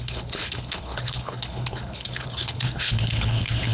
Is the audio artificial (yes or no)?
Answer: yes